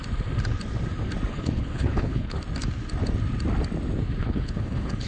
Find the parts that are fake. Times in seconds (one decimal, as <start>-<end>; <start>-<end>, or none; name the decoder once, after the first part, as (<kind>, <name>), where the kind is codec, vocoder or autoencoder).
1.3-2.4 (codec, HILCodec); 4.2-5.1